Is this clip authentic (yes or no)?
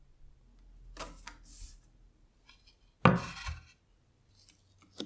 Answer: yes